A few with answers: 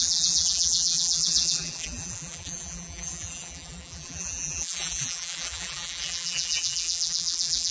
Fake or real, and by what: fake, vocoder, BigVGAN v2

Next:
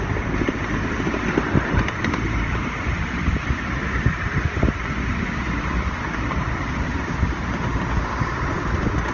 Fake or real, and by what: fake, vocoder, BigVGAN v2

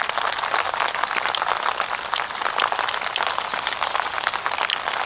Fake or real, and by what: real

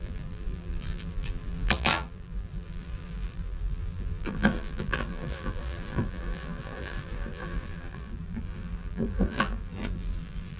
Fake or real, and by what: fake, vocoder, BigVGAN v2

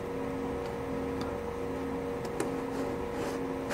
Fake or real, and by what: real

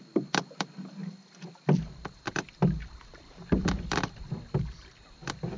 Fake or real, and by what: fake, vocoder, BigVGAN v2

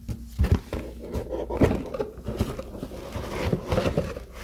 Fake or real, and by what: real